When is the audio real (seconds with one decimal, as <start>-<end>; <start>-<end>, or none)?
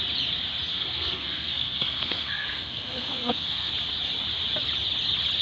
0.0-0.7; 3.7-5.4